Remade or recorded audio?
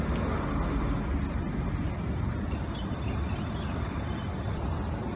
recorded